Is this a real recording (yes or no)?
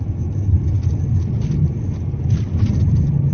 yes